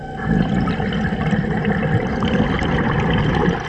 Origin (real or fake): real